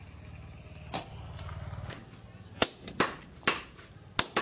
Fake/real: real